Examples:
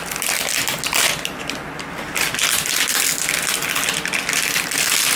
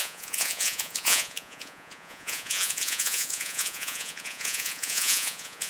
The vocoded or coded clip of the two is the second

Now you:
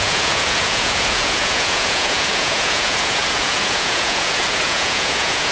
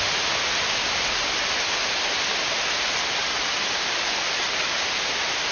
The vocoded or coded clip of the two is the first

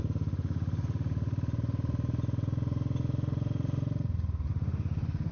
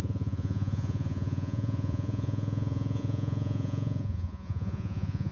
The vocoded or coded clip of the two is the second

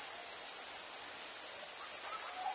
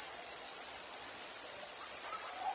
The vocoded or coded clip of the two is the second